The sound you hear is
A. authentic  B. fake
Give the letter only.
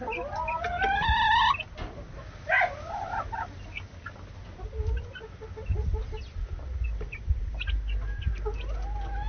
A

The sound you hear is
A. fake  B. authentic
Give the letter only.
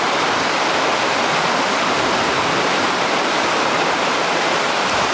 A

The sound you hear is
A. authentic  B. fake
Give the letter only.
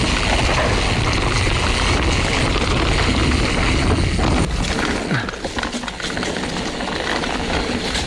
A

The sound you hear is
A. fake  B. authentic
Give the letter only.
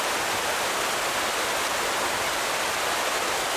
B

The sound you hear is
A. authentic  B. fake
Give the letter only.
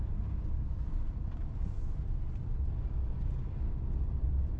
A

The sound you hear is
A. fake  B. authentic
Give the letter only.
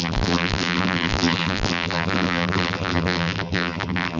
A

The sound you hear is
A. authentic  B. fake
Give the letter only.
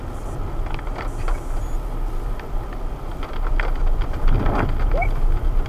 A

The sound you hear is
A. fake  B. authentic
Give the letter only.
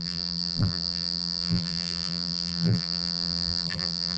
A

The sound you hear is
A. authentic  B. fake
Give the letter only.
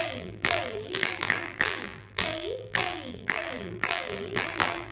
B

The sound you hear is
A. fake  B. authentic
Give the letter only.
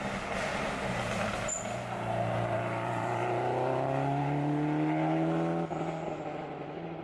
B